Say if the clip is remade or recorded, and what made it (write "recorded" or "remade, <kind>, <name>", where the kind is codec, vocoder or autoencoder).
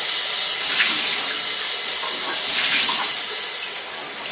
recorded